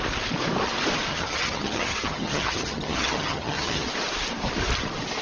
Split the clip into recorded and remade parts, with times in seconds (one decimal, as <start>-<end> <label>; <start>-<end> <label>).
0.0-1.1 recorded; 1.1-3.9 remade; 3.9-5.2 recorded